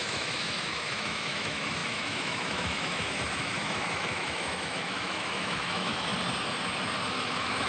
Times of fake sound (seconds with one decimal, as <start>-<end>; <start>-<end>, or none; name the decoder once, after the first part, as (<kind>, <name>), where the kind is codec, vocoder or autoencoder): 0.0-6.1 (autoencoder, DAC-VAE); 7.2-7.7